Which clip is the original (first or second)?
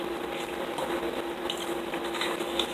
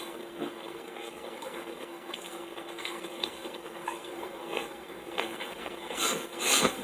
first